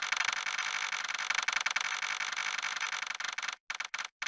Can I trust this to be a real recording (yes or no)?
yes